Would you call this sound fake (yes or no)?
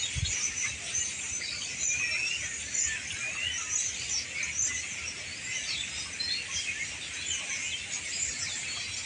no